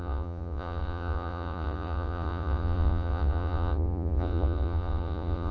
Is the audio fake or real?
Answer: fake